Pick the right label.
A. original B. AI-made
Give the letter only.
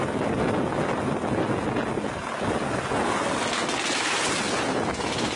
A